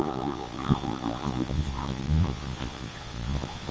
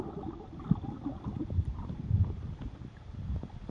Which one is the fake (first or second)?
first